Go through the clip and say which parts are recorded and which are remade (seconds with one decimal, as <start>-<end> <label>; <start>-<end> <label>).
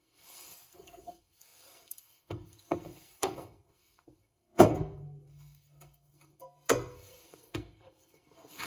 0.0-8.7 remade